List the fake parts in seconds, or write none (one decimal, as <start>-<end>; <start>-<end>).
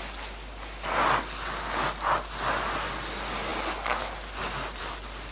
none